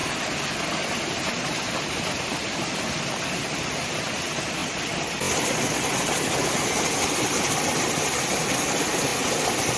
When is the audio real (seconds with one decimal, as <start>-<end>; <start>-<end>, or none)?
0.0-9.8